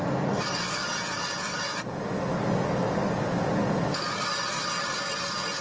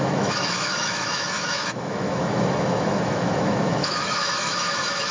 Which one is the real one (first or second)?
first